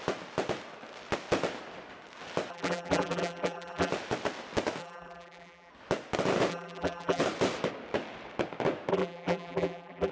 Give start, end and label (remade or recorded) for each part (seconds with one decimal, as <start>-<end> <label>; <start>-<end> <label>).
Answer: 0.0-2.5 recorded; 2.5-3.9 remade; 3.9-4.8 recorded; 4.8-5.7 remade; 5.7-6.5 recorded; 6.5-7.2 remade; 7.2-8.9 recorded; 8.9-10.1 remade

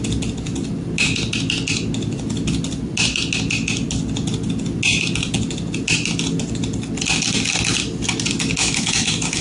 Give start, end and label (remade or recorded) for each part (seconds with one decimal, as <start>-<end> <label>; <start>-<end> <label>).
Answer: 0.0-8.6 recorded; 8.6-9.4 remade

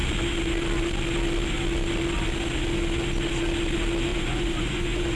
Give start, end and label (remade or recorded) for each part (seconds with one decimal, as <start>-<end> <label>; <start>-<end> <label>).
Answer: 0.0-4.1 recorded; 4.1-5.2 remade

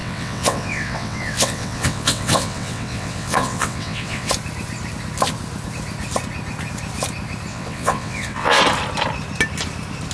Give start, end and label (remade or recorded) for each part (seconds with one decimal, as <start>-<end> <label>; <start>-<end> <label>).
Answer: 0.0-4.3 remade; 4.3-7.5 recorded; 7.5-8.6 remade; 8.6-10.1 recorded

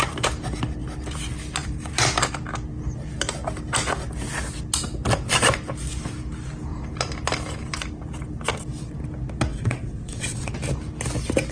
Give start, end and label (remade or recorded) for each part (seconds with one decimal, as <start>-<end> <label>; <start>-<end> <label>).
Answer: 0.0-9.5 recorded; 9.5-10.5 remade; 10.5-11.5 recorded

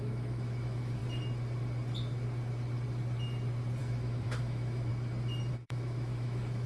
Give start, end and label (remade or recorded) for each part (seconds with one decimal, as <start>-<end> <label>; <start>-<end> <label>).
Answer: 0.0-1.0 remade; 1.0-3.8 recorded; 3.8-4.9 remade; 4.9-5.5 recorded; 5.5-6.7 remade

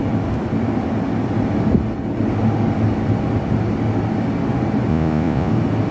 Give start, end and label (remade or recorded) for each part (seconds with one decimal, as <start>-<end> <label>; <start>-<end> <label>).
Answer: 0.0-4.9 recorded; 4.9-5.5 remade; 5.5-5.9 recorded

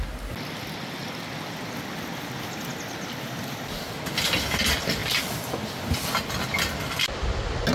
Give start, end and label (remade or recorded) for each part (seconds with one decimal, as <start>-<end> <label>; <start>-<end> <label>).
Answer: 0.0-7.7 recorded